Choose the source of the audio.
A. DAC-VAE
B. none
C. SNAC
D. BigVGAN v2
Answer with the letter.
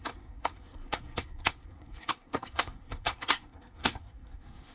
C